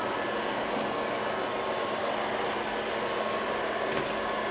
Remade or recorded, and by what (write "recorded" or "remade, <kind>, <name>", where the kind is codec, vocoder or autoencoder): recorded